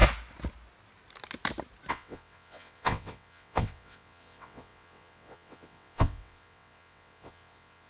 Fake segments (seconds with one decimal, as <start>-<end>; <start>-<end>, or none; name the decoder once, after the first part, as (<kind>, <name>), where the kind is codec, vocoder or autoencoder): 1.9-7.9 (vocoder, WaveNeXt)